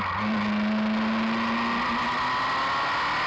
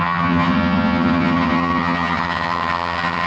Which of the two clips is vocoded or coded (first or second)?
second